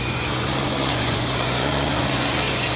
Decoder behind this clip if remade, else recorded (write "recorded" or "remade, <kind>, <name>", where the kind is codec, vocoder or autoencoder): remade, vocoder, Vocos